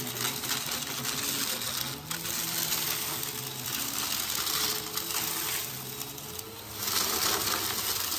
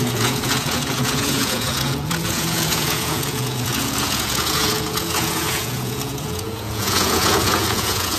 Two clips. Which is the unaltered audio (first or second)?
first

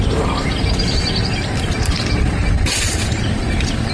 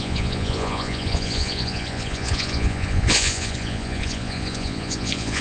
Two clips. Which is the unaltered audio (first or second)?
first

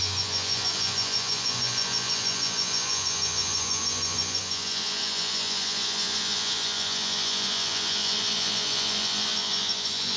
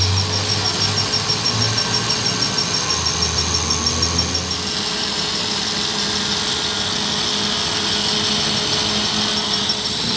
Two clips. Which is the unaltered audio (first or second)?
second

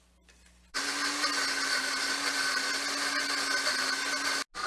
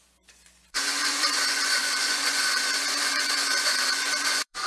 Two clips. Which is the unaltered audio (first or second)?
first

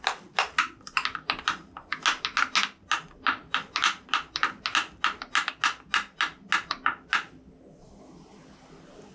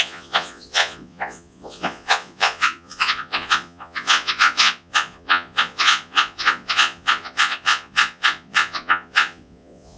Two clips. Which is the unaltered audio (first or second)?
first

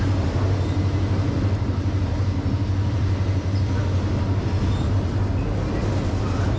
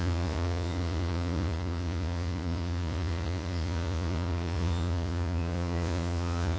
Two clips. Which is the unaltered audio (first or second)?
first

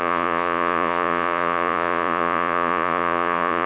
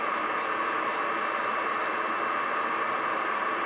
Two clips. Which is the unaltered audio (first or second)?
second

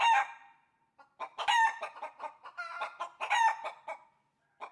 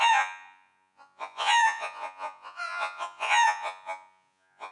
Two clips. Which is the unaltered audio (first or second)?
first